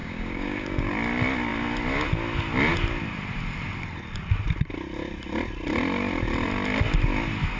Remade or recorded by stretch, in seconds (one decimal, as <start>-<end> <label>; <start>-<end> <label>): 0.0-0.9 remade; 0.9-7.6 recorded